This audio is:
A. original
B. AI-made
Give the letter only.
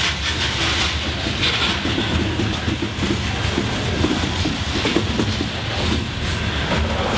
A